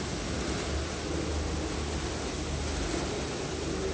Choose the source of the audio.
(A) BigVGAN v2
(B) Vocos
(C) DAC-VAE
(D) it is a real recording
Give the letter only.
D